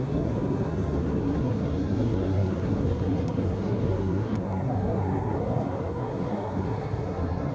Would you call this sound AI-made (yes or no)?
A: yes